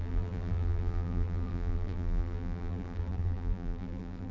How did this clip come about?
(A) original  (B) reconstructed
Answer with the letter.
B